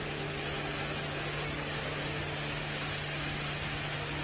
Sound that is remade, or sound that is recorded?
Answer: recorded